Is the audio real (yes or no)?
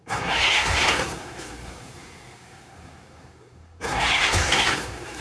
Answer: no